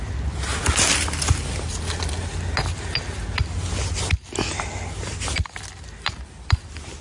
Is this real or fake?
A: real